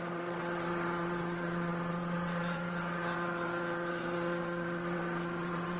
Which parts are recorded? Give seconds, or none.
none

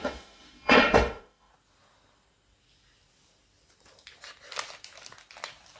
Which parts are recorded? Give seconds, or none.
1.5-5.8

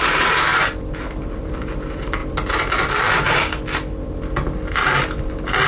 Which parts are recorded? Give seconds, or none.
0.5-1.4; 2.2-5.7

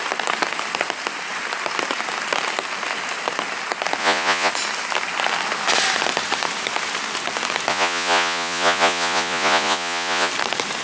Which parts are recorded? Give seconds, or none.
0.0-4.0; 4.5-7.7; 10.3-10.8

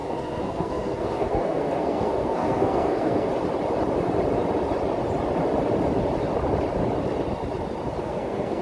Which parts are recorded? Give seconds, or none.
3.3-8.0

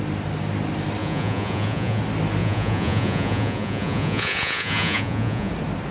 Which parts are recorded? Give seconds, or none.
0.0-1.0; 2.0-2.4; 5.5-5.9

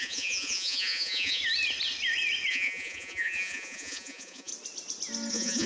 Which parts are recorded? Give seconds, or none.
1.4-2.5; 4.5-5.3

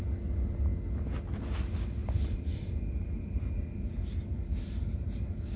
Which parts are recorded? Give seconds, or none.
0.0-2.0; 3.4-4.5